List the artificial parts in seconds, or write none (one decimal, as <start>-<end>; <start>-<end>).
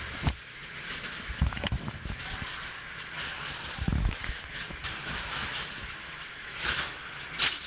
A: 0.5-2.3; 3.9-7.0